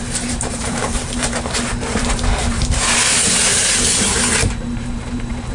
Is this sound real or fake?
fake